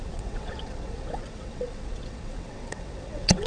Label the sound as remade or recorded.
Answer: remade